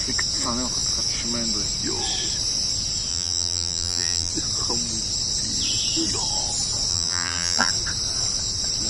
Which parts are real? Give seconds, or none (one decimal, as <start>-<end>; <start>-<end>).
0.0-3.1; 4.3-6.9; 7.7-8.9